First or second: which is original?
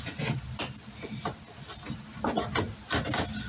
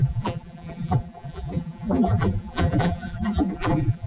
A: first